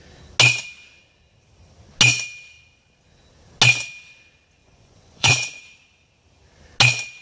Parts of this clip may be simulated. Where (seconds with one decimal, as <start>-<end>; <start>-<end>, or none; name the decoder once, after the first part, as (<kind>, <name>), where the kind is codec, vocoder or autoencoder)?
4.6-5.6 (vocoder, Vocos)